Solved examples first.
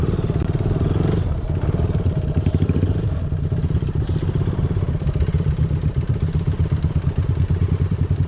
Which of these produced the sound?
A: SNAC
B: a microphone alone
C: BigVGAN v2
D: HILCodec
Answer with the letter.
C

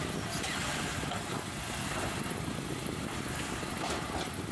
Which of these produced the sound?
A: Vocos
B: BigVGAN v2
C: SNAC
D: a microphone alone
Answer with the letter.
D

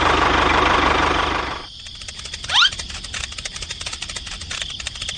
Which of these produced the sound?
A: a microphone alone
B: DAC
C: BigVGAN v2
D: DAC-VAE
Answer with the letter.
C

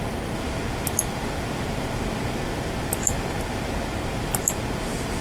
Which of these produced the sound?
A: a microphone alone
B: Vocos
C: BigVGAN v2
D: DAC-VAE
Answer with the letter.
A